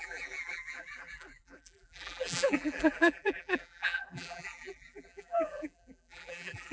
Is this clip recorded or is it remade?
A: remade